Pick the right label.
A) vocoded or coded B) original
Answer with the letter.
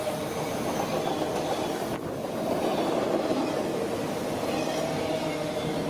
B